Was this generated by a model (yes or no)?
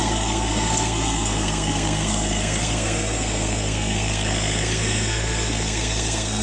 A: yes